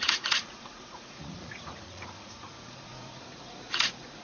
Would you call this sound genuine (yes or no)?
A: no